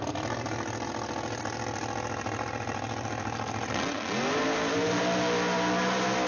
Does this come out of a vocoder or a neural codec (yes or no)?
no